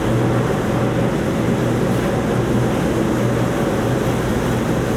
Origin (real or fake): real